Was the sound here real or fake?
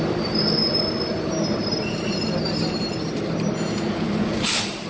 real